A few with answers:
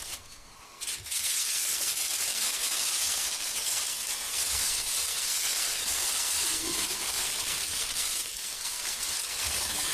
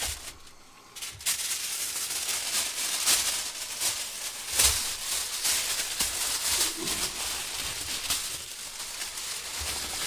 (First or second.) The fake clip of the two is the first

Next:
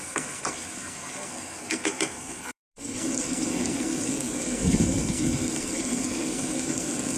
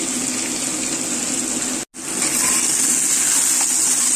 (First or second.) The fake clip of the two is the first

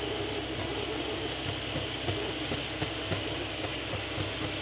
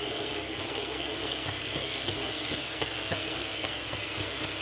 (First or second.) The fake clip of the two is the second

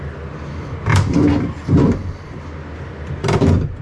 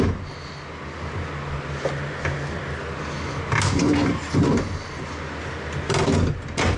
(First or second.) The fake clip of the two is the first